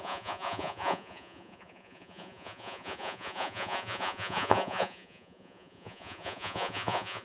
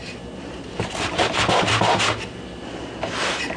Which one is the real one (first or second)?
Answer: second